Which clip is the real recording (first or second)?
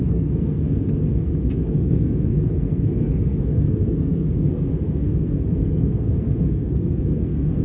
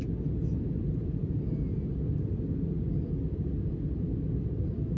second